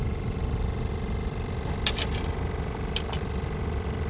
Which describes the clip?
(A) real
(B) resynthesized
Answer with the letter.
A